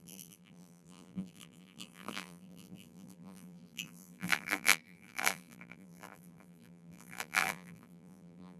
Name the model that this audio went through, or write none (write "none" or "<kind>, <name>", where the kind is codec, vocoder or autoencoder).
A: vocoder, BigVGAN v2